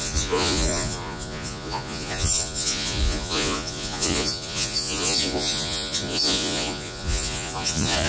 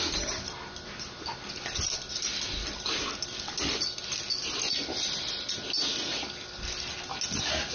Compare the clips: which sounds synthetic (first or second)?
first